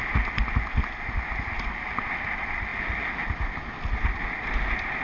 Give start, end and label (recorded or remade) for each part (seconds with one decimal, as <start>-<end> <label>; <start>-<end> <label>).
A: 0.0-5.0 recorded